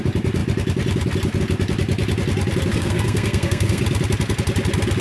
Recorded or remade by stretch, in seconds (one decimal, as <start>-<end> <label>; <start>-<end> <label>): 0.0-2.7 recorded; 2.7-3.8 remade; 3.8-5.0 recorded